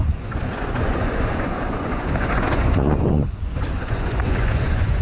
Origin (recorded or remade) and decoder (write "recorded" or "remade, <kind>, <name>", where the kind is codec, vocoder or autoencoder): remade, vocoder, Vocos